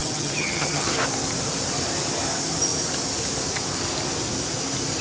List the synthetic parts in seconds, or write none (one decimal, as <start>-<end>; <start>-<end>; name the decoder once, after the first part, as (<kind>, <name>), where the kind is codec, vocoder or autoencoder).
0.0-0.9 (vocoder, HiFi-GAN)